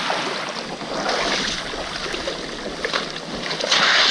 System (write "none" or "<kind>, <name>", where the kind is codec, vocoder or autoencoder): none